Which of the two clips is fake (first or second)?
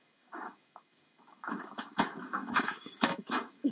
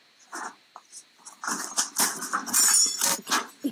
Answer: first